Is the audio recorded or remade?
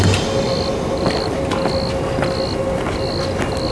recorded